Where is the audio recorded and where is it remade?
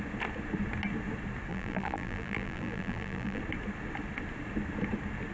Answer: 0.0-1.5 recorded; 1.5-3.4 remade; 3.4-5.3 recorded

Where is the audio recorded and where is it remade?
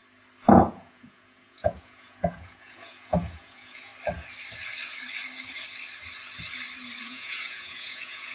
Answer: 0.0-0.5 recorded; 0.5-3.9 remade; 3.9-7.0 recorded; 7.0-8.3 remade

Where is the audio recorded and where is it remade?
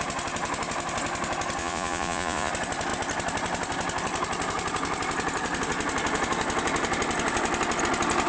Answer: 0.0-1.6 recorded; 1.6-2.5 remade; 2.5-8.3 recorded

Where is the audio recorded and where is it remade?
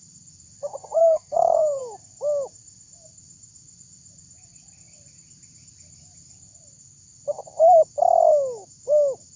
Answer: 0.0-1.0 recorded; 1.0-1.8 remade; 1.8-9.4 recorded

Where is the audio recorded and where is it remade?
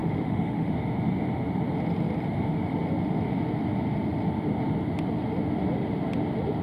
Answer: 0.0-0.7 remade; 0.7-6.6 recorded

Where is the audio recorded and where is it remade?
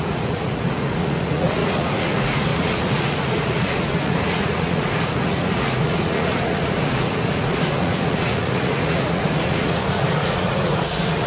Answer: 0.0-11.3 remade